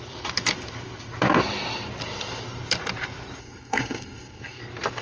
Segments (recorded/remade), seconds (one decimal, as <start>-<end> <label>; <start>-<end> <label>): 0.0-3.4 recorded; 3.4-4.6 remade; 4.6-5.0 recorded

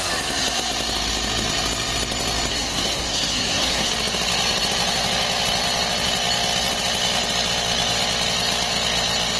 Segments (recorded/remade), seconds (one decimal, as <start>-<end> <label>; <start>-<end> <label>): 0.0-2.5 recorded; 2.5-3.9 remade; 3.9-9.4 recorded

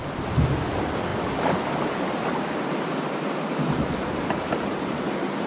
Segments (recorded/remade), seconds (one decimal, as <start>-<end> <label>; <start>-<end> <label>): 0.0-5.5 recorded

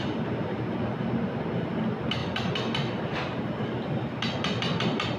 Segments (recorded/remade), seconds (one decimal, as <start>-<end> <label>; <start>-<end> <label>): 0.0-5.2 recorded

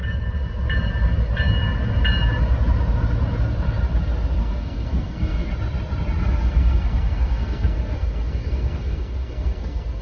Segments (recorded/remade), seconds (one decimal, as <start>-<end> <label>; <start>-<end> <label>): 0.0-4.4 recorded; 4.4-5.5 remade; 5.5-6.4 recorded; 6.4-10.0 remade